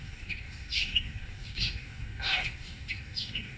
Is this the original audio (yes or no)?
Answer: no